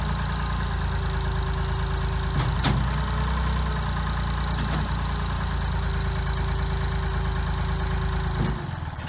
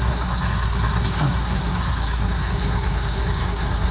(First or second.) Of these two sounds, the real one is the first